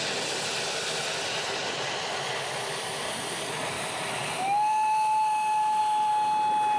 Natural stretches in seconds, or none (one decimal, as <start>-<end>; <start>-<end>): 0.0-6.8